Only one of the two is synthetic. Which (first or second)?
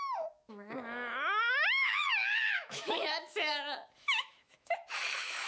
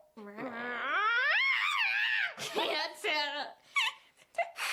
first